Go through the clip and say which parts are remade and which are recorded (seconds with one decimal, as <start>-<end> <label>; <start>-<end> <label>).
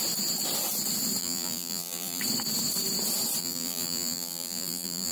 0.0-1.2 recorded; 1.2-2.2 remade; 2.2-3.4 recorded; 3.4-5.1 remade